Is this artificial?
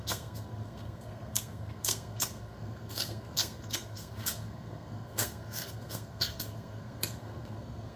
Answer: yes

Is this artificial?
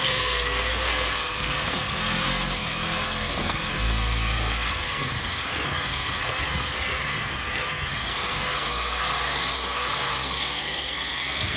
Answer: yes